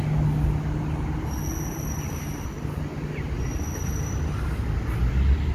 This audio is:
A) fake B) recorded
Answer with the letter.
B